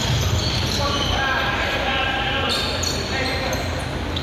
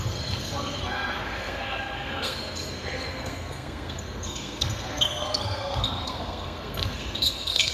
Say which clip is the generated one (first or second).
second